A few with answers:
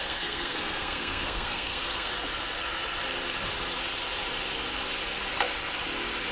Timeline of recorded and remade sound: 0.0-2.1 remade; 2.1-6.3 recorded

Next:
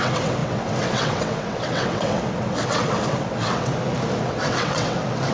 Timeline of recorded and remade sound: 0.0-3.7 remade; 3.7-4.2 recorded; 4.2-5.3 remade

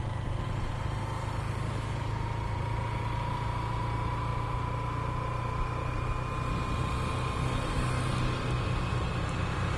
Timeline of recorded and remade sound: 0.0-9.8 recorded

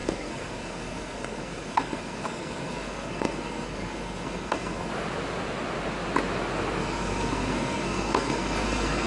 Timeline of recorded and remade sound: 0.0-4.9 remade; 4.9-6.8 recorded; 6.8-9.1 remade

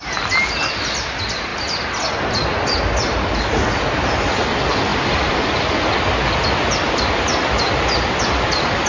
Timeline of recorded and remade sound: 0.0-4.9 recorded; 4.9-5.9 remade; 5.9-8.9 recorded

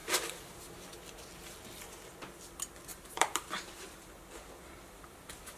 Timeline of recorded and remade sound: 0.0-2.9 recorded; 2.9-4.0 remade; 4.0-5.6 recorded